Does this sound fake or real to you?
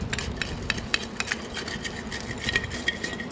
real